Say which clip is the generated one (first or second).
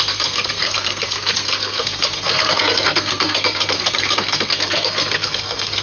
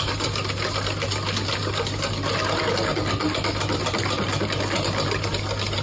first